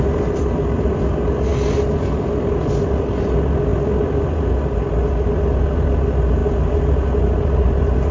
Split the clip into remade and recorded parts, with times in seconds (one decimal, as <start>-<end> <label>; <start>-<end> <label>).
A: 0.0-8.1 recorded